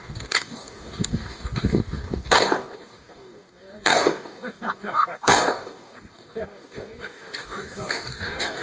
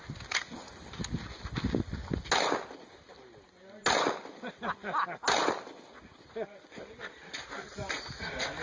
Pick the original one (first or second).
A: second